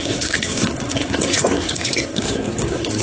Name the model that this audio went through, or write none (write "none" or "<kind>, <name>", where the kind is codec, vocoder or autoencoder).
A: codec, SNAC